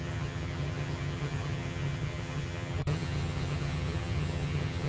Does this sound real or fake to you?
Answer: fake